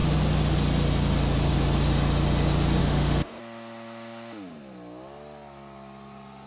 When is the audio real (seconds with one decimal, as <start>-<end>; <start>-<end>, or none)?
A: 0.0-2.8; 3.4-6.5

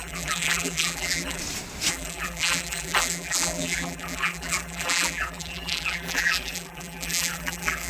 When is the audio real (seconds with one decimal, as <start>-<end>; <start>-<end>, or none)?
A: 1.4-1.9

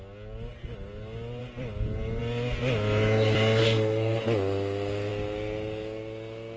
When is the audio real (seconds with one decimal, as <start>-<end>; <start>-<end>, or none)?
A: 0.0-3.6; 4.2-6.6

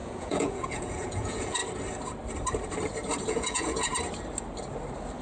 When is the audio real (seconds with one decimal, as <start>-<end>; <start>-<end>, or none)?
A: 1.6-3.3; 3.9-5.2

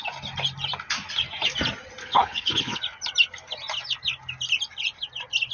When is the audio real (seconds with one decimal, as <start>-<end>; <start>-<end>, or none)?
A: 0.0-2.0; 2.8-5.5

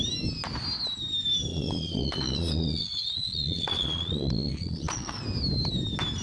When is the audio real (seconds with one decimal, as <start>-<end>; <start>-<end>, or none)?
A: 0.0-1.5; 5.2-6.2

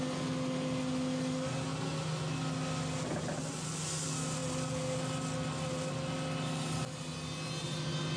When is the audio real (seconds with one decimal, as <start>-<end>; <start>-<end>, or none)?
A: 0.0-8.2